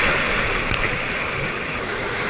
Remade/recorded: recorded